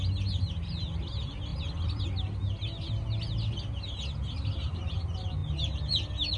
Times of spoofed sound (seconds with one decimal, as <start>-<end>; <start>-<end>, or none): none